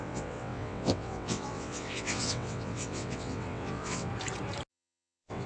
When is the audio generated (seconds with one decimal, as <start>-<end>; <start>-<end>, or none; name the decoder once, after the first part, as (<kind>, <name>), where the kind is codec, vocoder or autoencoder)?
0.0-4.1 (vocoder, WaveNeXt); 4.7-5.5

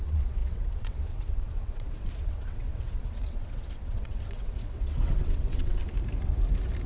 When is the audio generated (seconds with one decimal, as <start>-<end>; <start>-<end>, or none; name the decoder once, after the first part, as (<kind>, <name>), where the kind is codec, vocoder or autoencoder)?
0.0-5.8 (vocoder, WaveNeXt)